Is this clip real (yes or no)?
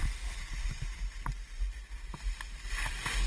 yes